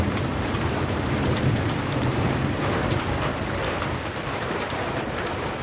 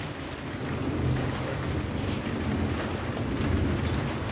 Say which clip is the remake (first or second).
first